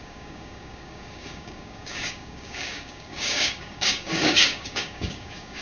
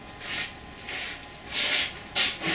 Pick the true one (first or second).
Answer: second